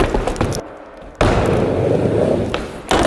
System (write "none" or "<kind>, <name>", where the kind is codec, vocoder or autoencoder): none